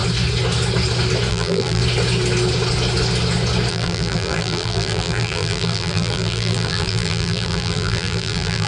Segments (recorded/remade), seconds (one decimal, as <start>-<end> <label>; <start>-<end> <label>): 0.0-1.3 recorded; 1.3-1.8 remade; 1.8-3.7 recorded; 3.7-8.7 remade